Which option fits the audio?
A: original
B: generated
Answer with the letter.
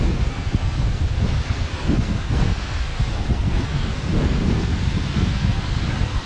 B